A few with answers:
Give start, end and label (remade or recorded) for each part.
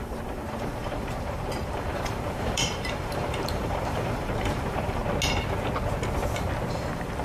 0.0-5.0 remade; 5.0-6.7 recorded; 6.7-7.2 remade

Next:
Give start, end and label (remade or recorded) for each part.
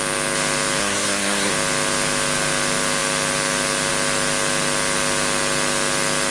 0.0-0.8 recorded; 0.8-1.5 remade; 1.5-6.3 recorded